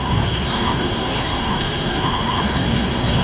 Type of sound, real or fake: fake